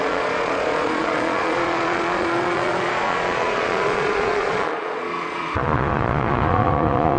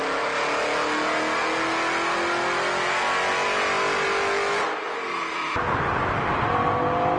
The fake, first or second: first